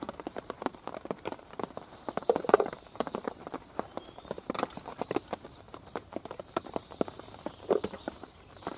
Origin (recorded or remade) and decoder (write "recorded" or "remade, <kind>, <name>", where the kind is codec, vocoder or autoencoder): remade, vocoder, BigVGAN v2